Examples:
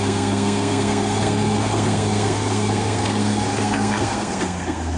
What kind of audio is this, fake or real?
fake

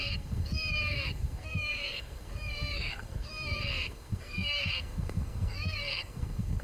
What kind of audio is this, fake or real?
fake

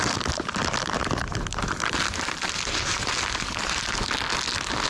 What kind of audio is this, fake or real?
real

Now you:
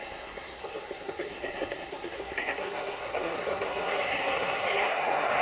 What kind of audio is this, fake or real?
fake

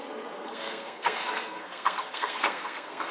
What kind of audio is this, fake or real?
fake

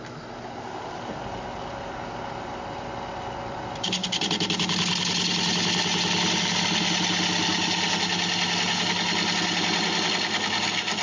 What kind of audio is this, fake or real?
real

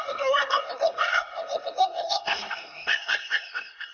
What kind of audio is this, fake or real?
fake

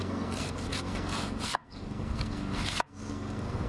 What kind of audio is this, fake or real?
fake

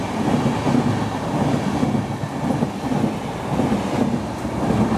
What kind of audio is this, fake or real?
real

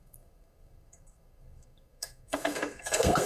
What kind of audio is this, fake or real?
fake